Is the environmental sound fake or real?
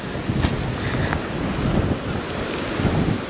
real